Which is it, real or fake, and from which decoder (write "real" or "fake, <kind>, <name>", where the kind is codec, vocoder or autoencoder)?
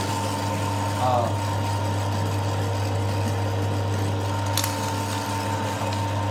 real